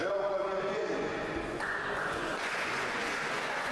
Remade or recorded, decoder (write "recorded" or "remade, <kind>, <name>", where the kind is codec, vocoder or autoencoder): remade, vocoder, Vocos